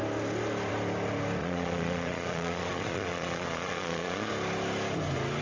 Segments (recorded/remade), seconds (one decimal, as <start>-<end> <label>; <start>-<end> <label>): 0.0-1.4 recorded; 1.4-4.3 remade; 4.3-5.4 recorded